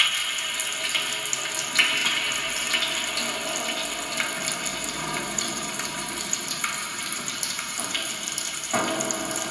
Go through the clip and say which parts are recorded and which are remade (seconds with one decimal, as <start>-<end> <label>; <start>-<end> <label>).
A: 0.0-2.0 recorded; 2.0-2.7 remade; 2.7-4.7 recorded; 4.7-8.8 remade; 8.8-9.5 recorded